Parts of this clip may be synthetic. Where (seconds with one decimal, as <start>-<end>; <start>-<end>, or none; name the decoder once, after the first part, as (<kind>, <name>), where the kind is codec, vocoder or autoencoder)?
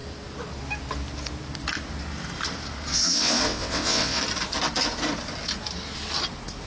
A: 2.9-4.2 (vocoder, WaveNeXt)